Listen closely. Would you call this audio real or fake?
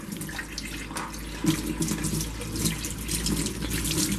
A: real